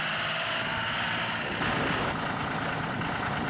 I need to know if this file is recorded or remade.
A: recorded